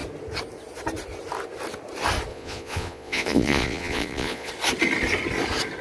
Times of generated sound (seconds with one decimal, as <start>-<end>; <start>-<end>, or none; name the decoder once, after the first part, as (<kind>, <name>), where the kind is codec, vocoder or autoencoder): 2.3-4.5 (vocoder, Vocos)